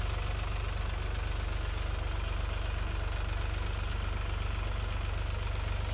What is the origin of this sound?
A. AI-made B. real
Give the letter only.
B